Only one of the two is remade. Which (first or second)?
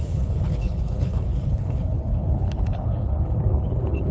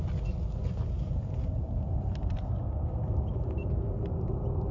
first